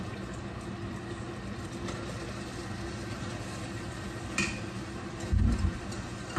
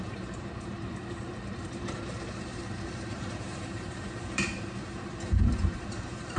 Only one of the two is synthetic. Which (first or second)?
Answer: second